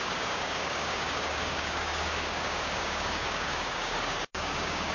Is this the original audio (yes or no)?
no